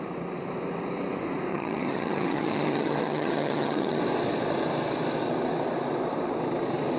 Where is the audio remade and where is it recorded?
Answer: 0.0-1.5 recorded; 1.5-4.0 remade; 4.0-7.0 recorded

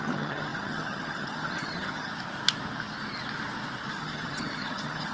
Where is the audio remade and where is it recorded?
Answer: 0.0-2.1 remade; 2.1-3.9 recorded; 3.9-5.1 remade

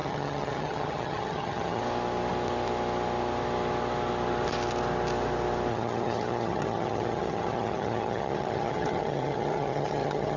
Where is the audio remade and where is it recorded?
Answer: 0.0-1.8 remade; 1.8-5.7 recorded; 5.7-10.4 remade

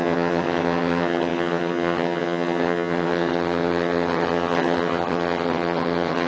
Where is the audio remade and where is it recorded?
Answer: 0.0-6.3 remade

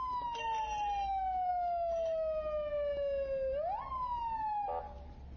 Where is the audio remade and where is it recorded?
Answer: 0.0-5.4 recorded